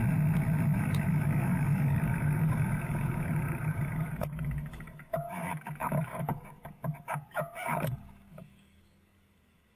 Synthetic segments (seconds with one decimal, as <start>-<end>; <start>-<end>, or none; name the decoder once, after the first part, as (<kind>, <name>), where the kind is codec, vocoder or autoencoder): 0.8-9.8 (codec, DAC)